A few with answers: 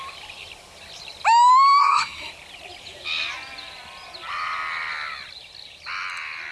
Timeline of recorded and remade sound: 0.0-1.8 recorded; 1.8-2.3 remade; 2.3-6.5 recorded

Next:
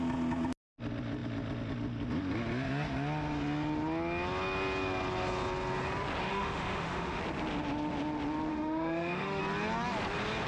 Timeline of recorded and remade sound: 0.0-6.3 recorded; 6.3-7.2 remade; 7.2-8.5 recorded; 8.5-9.4 remade; 9.4-10.5 recorded